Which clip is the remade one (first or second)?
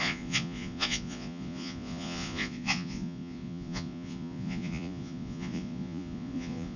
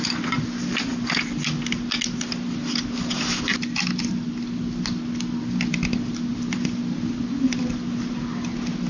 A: first